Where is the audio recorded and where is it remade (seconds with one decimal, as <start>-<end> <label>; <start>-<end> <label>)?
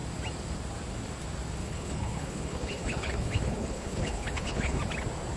0.0-1.6 recorded; 1.6-4.8 remade; 4.8-5.4 recorded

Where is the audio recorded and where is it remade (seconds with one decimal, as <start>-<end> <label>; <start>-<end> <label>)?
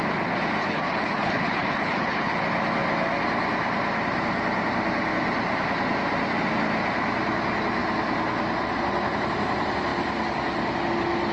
0.0-0.6 recorded; 0.6-2.4 remade; 2.4-11.3 recorded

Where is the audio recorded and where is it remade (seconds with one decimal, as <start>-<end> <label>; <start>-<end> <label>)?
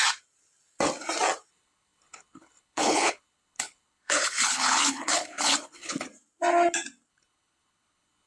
0.0-1.5 recorded; 1.5-6.1 remade; 6.1-7.1 recorded; 7.1-8.3 remade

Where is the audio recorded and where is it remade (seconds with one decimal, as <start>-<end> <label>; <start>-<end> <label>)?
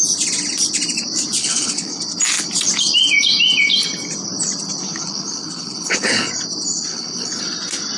0.0-1.4 recorded; 1.4-2.0 remade; 2.0-4.8 recorded; 4.8-6.3 remade; 6.3-6.9 recorded; 6.9-7.4 remade; 7.4-8.0 recorded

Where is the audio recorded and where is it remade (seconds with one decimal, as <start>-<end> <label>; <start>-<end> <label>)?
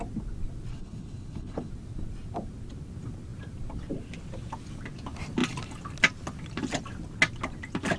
0.0-0.7 recorded; 0.7-1.7 remade; 1.7-8.0 recorded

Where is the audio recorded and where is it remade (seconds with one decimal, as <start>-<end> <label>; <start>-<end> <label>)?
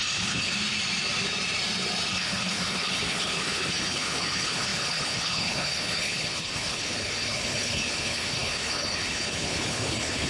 0.0-0.5 remade; 0.5-2.1 recorded; 2.1-10.3 remade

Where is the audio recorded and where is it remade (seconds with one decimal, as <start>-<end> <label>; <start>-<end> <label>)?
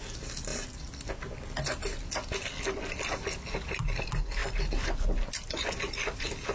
0.0-6.5 recorded